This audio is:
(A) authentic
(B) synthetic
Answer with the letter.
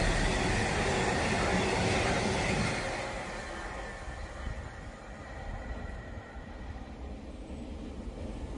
A